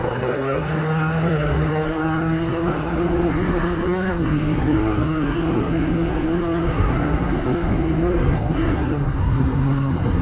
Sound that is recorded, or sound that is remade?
remade